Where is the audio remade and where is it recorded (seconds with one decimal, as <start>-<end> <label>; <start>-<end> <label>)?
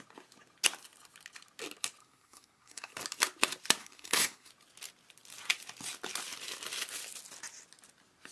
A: 0.0-2.0 recorded; 2.0-2.9 remade; 2.9-3.8 recorded; 3.8-4.5 remade; 4.5-8.3 recorded